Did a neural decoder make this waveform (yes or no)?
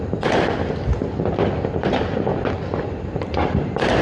no